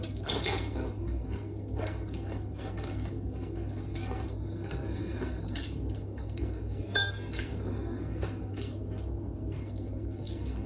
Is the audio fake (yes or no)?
yes